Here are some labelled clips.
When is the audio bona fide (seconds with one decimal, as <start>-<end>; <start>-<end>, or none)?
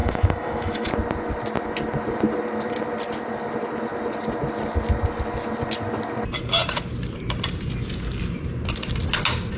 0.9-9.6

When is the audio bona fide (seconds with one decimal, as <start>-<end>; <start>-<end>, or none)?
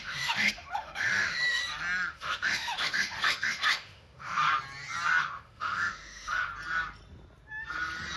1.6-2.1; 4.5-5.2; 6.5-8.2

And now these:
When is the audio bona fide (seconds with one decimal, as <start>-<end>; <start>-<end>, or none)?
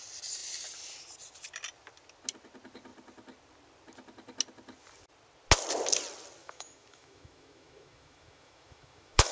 0.0-6.4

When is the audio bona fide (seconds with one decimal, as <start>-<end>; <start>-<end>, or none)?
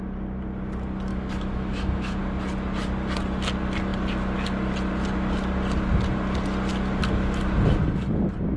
0.0-1.1; 2.2-8.6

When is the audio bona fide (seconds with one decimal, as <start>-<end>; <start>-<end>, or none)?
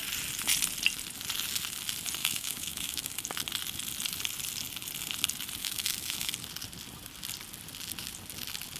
0.0-2.2; 3.1-5.6; 6.3-8.8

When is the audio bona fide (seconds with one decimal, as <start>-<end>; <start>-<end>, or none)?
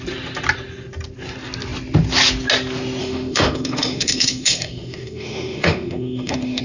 0.0-3.0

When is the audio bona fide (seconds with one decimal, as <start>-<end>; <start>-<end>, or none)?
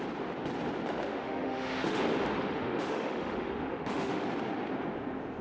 0.0-1.1; 2.0-2.4; 4.2-5.4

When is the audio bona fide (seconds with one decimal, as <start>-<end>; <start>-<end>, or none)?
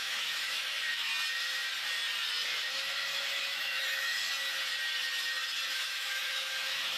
1.1-2.7; 4.2-5.7